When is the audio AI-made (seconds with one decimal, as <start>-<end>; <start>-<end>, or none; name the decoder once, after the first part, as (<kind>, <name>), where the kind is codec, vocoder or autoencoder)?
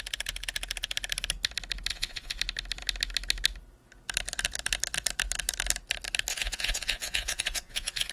1.9-2.4 (vocoder, Vocos); 6.3-8.1